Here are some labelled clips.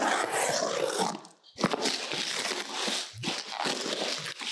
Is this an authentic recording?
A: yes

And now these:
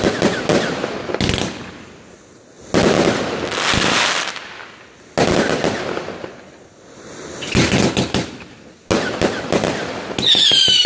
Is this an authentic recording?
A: yes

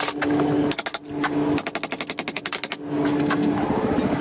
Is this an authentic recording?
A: yes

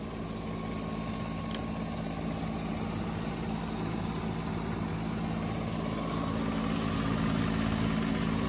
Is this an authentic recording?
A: yes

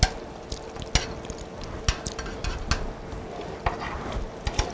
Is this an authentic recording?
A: yes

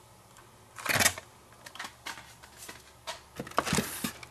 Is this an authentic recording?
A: yes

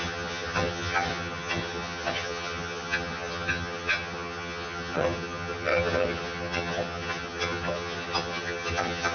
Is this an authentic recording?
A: no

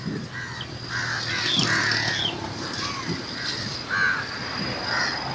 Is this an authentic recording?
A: yes